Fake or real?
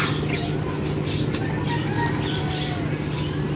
real